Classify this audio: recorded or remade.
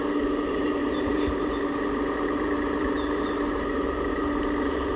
remade